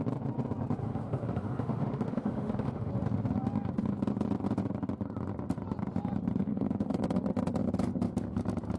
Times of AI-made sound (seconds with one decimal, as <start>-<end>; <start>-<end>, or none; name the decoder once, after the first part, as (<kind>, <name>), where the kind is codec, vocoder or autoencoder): 0.8-2.9 (autoencoder, DAC-VAE); 6.5-7.0